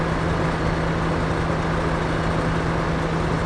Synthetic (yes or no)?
no